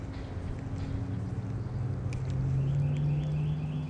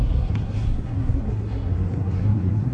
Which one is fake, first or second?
second